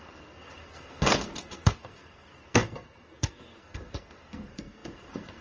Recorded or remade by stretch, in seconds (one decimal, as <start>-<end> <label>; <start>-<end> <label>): 0.0-5.4 remade